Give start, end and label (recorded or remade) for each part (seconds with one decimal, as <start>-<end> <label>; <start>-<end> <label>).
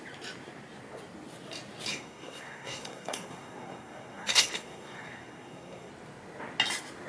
0.0-1.9 recorded; 1.9-5.9 remade; 5.9-7.1 recorded